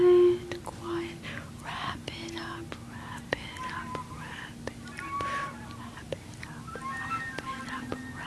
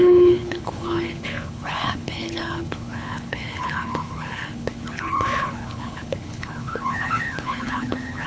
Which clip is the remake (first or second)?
second